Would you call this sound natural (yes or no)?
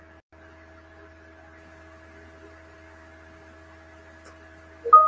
yes